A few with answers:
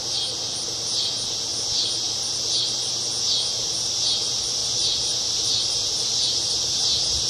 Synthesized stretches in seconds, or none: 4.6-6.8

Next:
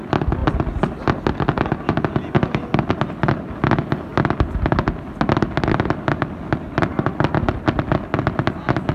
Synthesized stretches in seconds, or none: none

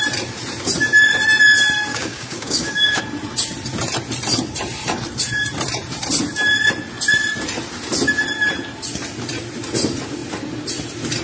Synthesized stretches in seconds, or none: 1.9-3.0

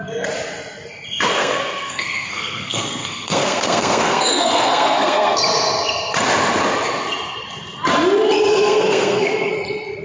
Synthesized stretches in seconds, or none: 1.4-5.4; 8.5-9.5